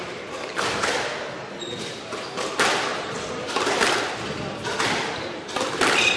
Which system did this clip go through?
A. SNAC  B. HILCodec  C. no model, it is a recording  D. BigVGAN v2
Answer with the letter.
C